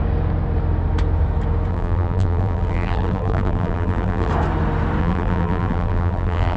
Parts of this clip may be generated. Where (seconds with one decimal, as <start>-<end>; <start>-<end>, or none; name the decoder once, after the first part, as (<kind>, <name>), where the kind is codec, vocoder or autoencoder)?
1.7-4.3 (vocoder, BigVGAN v2); 5.0-6.6